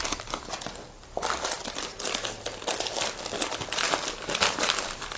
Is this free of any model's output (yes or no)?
yes